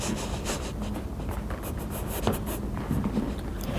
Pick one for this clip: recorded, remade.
recorded